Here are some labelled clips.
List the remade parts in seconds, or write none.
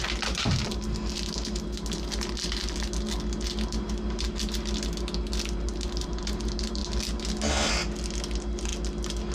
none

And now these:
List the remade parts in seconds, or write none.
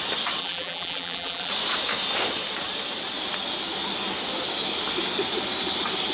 0.4-1.5 (vocoder, BigVGAN v2)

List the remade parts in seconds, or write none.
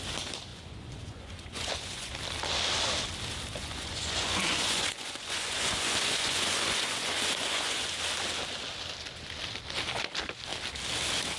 0.5-2.1 (vocoder, Vocos); 3.6-7.9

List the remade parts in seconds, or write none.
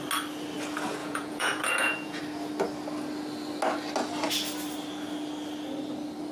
1.0-2.2 (vocoder, Vocos)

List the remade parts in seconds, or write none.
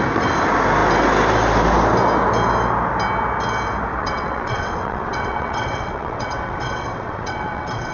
4.0-7.9 (vocoder, WaveNeXt)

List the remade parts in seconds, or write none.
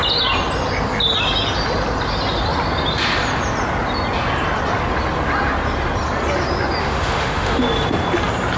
6.8-7.6 (autoencoder, DAC-VAE)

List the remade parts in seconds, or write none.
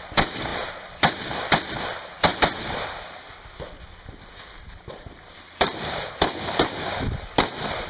0.0-2.3 (vocoder, BigVGAN v2); 4.0-7.9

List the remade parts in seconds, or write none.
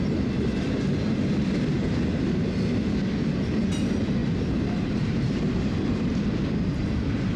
4.2-6.1 (vocoder, BigVGAN v2)